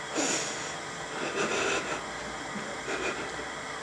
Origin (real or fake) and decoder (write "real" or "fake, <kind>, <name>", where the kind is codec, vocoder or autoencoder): real